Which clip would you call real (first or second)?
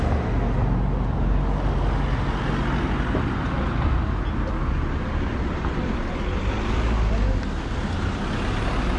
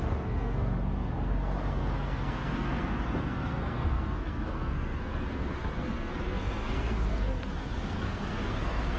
first